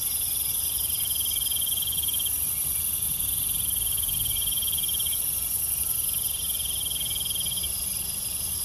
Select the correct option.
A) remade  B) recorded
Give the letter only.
B